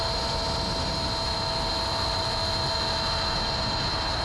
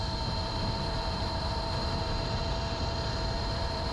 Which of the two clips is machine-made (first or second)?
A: second